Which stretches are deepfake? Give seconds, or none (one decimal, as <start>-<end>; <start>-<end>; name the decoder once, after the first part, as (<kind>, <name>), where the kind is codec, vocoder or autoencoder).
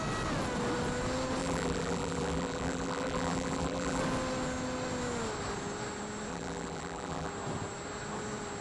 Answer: 1.4-4.0 (vocoder, BigVGAN v2); 6.3-7.3